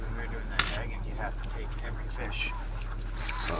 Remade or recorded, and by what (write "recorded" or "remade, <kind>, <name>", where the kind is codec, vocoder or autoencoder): recorded